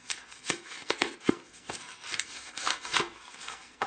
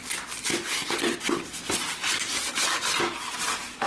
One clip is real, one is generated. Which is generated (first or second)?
first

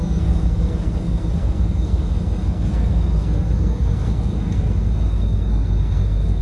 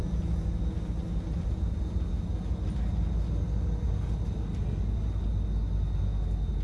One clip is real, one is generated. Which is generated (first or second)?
first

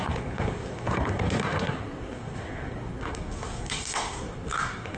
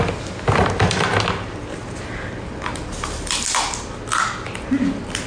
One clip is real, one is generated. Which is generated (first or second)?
first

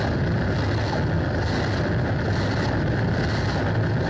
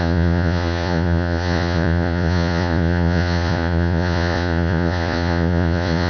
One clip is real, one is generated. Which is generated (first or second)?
second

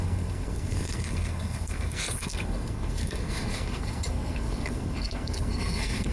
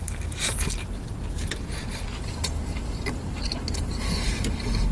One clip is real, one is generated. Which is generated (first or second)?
first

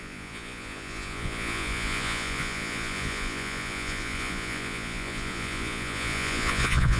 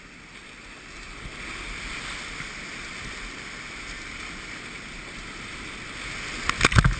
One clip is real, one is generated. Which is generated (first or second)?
first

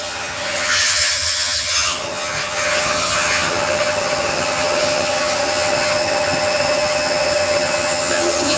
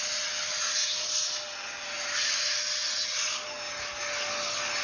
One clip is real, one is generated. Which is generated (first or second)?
first